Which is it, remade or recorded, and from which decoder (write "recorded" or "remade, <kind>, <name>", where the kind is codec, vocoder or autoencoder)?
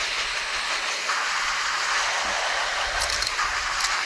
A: recorded